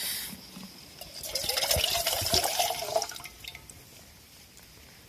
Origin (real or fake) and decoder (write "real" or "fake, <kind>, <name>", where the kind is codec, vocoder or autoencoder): real